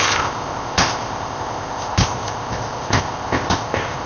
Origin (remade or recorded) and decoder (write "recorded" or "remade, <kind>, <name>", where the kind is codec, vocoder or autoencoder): remade, codec, ZipCodec